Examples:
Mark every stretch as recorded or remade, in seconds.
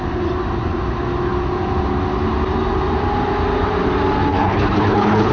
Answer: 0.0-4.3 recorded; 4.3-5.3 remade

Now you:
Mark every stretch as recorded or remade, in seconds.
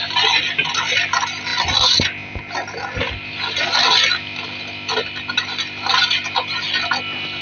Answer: 0.0-7.4 recorded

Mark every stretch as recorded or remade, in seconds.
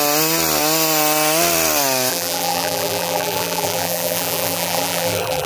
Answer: 0.0-2.1 recorded; 2.1-5.5 remade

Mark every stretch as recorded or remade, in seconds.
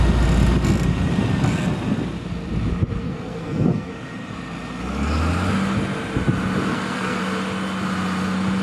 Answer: 0.0-3.0 recorded; 3.0-3.9 remade; 3.9-6.7 recorded; 6.7-7.2 remade; 7.2-8.6 recorded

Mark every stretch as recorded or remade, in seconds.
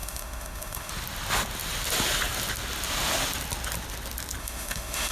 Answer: 0.0-0.9 remade; 0.9-4.4 recorded; 4.4-5.1 remade